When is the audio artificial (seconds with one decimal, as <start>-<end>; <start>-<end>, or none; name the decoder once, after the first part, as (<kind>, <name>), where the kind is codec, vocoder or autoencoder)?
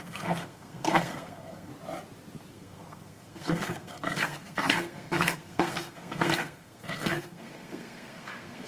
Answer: 0.0-1.7 (codec, SNAC); 2.5-8.7